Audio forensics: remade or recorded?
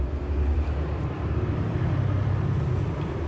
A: remade